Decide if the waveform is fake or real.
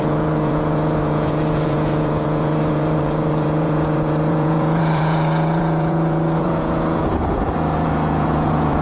fake